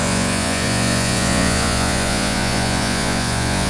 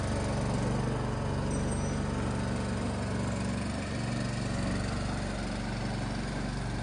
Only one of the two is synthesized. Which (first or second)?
first